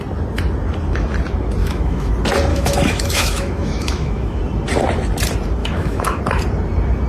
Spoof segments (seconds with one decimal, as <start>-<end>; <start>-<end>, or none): 1.6-2.1; 2.5-4.4; 5.6-6.2